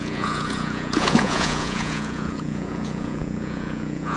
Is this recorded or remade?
remade